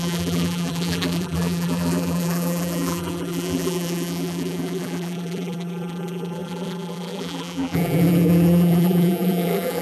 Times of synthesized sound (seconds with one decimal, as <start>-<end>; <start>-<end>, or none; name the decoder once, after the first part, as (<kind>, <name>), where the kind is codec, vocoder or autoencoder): 0.0-9.8 (vocoder, BigVGAN v2)